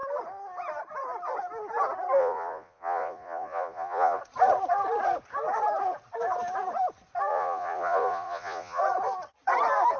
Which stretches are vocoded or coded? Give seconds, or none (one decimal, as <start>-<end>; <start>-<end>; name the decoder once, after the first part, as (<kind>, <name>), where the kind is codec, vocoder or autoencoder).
2.2-4.2 (vocoder, Vocos); 7.3-8.8